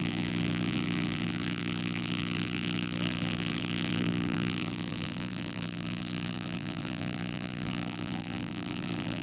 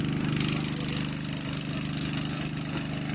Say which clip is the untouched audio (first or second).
second